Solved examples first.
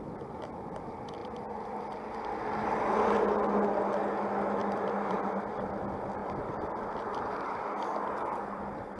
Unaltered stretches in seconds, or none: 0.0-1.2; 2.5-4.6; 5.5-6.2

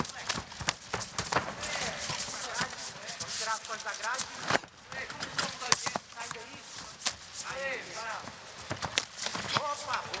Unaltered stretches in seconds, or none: 1.4-2.1; 4.6-5.6; 9.3-10.2

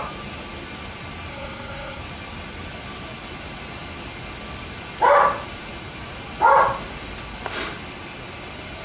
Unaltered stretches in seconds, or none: 0.0-1.3; 2.0-8.8